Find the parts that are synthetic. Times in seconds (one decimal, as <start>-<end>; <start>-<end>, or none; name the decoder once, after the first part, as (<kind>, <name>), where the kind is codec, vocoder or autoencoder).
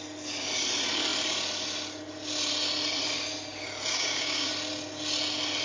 3.9-4.5 (codec, DAC)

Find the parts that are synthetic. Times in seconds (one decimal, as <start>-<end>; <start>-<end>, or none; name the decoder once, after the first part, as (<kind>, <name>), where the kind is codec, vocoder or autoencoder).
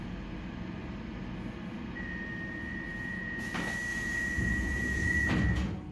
2.9-3.5 (vocoder, Vocos); 3.9-5.3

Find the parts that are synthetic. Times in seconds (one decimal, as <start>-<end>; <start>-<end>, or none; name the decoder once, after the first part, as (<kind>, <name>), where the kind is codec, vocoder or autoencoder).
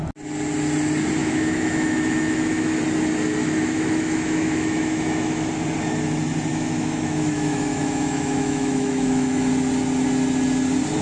1.2-2.8 (autoencoder, DAC-VAE); 3.4-5.5; 6.5-9.5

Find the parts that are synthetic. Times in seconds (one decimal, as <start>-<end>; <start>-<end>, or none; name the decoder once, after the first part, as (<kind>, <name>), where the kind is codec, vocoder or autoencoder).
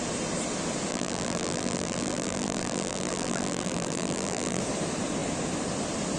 0.9-4.6 (vocoder, BigVGAN v2)